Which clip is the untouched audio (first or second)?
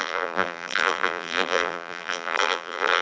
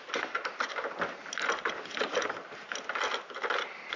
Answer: second